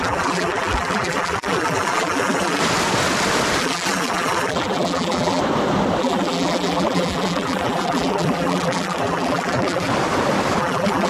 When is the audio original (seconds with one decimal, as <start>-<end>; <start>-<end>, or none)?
2.6-3.6; 5.4-6.0; 9.9-10.6